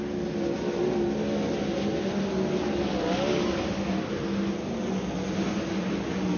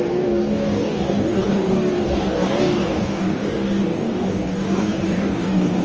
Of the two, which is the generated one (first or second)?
second